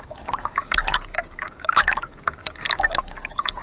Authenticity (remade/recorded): remade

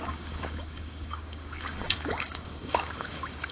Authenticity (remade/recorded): remade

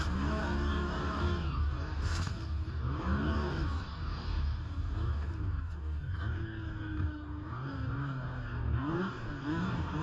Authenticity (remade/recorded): remade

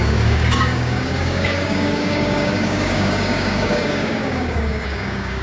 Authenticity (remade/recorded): remade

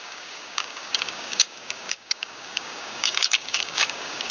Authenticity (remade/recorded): remade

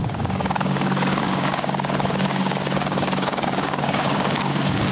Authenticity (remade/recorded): remade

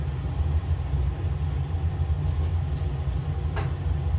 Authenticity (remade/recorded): recorded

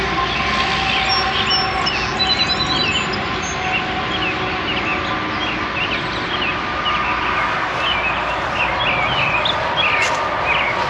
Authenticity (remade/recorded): recorded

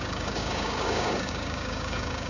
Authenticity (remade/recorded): remade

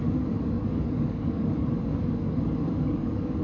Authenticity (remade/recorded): remade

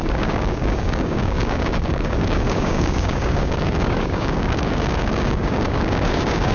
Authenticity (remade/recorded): remade